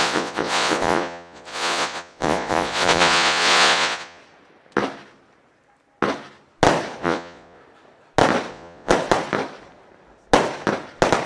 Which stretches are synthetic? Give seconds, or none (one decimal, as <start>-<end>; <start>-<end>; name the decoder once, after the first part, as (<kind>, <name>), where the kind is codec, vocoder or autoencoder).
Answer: 0.0-4.2 (vocoder, Vocos); 7.0-7.6; 8.5-8.9